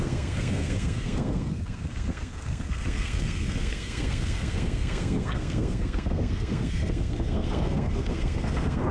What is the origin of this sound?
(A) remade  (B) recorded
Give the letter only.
A